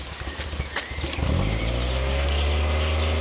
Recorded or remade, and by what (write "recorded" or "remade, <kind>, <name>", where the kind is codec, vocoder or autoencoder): recorded